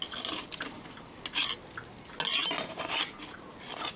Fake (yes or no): no